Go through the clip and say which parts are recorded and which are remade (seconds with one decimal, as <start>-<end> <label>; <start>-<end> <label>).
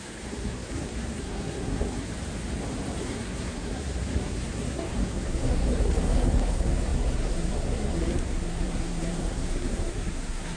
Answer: 0.0-2.1 remade; 2.1-3.0 recorded; 3.0-10.6 remade